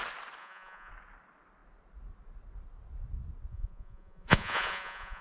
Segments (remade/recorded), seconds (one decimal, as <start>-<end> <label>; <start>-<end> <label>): 0.0-0.4 recorded; 0.4-0.9 remade; 0.9-3.5 recorded; 3.5-5.2 remade